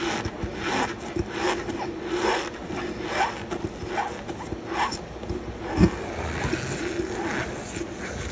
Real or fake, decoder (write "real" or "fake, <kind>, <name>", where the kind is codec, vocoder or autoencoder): real